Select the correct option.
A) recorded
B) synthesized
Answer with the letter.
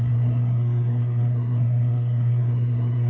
B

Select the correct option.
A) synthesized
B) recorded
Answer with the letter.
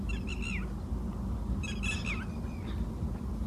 B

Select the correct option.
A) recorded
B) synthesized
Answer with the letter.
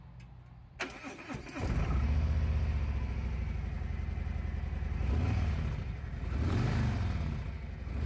A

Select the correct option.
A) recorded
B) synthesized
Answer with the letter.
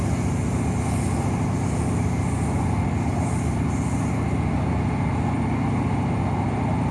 A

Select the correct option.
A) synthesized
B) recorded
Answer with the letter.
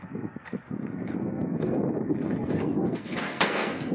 A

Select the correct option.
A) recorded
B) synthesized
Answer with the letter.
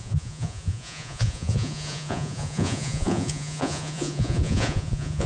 B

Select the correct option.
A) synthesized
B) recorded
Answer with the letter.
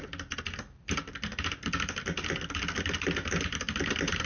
B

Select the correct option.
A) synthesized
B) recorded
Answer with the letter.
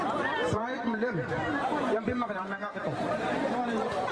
A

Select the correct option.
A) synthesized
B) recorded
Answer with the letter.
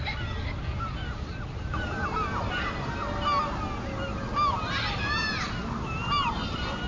B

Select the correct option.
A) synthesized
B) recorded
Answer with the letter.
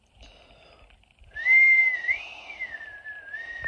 B